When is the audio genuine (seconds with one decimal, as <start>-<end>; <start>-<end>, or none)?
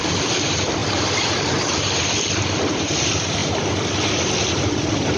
0.0-5.2